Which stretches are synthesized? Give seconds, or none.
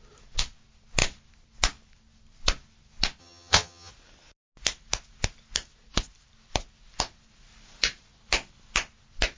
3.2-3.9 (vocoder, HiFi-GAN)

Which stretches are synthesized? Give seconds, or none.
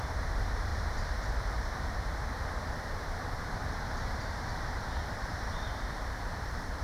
0.0-6.8 (vocoder, BigVGAN v2)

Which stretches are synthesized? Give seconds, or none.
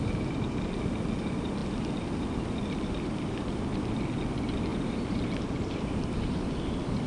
none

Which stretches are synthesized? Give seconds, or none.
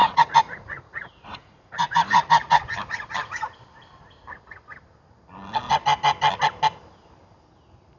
0.0-2.6 (vocoder, Vocos)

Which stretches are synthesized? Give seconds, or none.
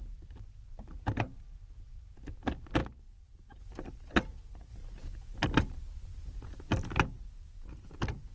none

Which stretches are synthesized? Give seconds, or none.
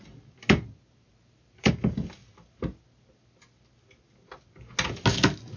1.1-1.7 (vocoder, BigVGAN v2)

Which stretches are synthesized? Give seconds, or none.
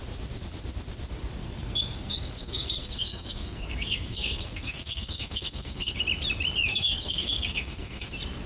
1.4-5.9 (codec, SNAC); 6.7-8.1